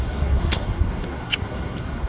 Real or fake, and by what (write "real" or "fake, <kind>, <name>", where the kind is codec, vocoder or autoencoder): fake, codec, SNAC